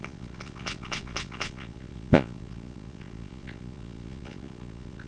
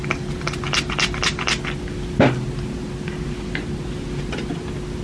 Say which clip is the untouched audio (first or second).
second